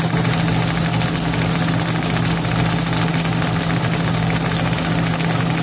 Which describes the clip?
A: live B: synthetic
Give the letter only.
A